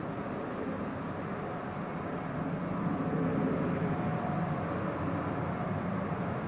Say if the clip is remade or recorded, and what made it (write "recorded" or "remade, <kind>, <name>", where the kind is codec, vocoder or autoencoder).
recorded